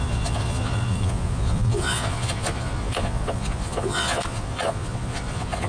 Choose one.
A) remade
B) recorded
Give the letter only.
A